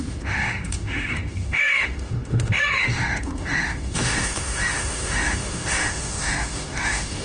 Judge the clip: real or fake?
fake